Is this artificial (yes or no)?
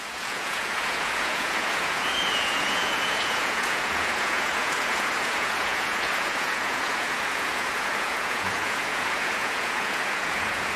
yes